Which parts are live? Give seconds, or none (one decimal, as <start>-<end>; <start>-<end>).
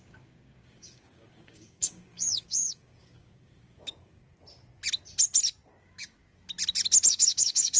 4.2-5.8; 6.2-7.1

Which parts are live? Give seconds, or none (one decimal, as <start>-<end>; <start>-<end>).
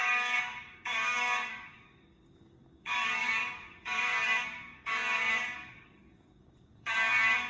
none